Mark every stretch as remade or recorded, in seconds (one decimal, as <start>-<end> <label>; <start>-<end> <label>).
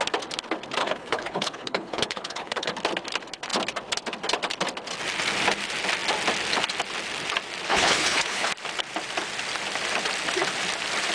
0.0-0.8 recorded; 0.8-2.7 remade; 2.7-7.7 recorded; 7.7-8.5 remade; 8.5-11.1 recorded